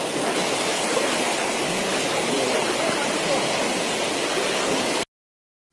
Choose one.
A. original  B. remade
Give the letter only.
A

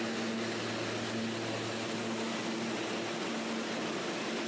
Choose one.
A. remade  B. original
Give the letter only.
B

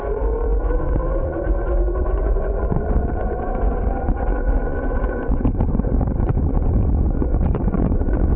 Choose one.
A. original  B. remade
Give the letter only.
B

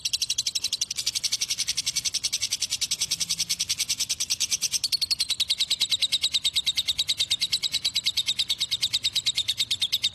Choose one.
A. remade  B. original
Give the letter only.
A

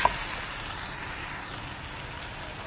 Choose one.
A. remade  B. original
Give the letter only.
B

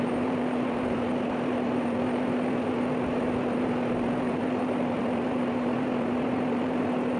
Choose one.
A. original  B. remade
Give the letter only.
B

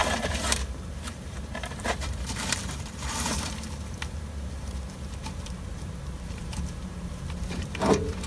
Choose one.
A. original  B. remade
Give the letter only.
B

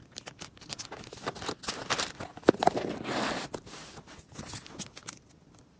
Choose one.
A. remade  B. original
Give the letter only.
B